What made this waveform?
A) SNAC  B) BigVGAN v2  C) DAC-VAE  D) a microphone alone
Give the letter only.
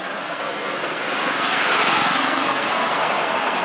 A